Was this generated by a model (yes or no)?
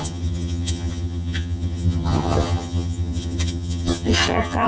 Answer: yes